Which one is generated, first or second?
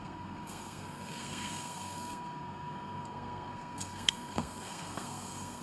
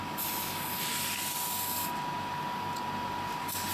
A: first